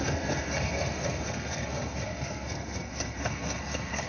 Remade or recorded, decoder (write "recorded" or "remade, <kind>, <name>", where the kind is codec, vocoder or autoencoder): remade, codec, SNAC